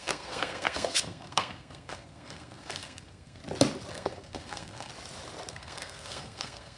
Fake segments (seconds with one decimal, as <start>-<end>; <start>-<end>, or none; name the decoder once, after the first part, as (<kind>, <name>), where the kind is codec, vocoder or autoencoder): 0.0-3.4 (codec, SNAC); 3.9-4.9; 5.5-6.8